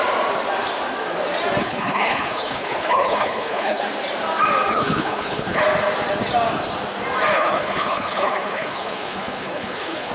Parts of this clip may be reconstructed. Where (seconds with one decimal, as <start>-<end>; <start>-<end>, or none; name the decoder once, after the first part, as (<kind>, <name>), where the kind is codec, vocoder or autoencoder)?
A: 1.6-3.8 (codec, HILCodec); 4.7-5.6; 7.3-10.1